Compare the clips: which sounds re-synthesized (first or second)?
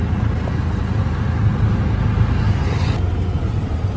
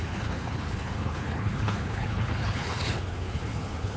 second